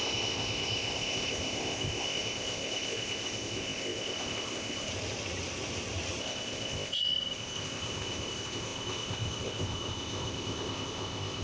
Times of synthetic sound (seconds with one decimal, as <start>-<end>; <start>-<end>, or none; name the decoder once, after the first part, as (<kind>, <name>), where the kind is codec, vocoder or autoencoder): 0.0-4.9 (codec, ZipCodec); 6.2-11.4